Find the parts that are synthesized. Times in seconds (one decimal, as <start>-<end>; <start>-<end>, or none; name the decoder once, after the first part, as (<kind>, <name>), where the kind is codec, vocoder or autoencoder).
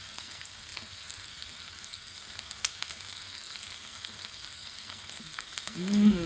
0.0-6.3 (codec, SNAC)